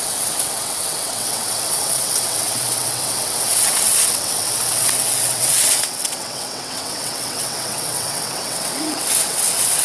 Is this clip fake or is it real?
fake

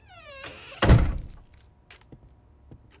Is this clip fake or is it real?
real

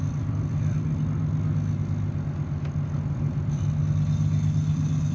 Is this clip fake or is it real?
real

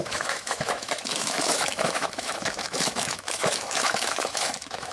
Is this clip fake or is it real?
fake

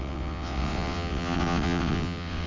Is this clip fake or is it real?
fake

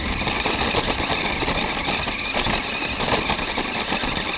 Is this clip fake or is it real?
real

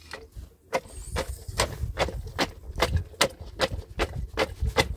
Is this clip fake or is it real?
real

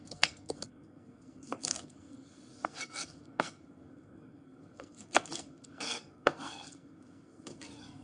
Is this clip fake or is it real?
fake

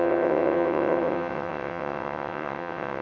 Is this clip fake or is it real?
fake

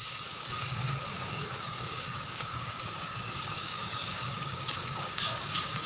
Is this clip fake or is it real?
fake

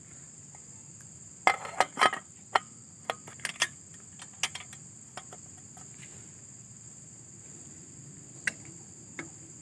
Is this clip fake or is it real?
real